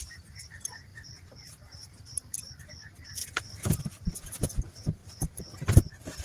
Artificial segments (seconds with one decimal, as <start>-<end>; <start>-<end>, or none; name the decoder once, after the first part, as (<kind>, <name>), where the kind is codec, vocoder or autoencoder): 0.9-2.6 (vocoder, BigVGAN v2); 3.2-3.8